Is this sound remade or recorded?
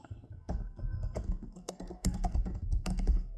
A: remade